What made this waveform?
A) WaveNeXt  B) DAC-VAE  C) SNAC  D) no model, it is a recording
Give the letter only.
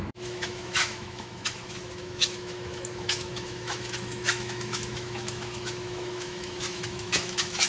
B